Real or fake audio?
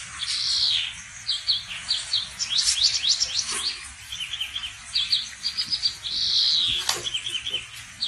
real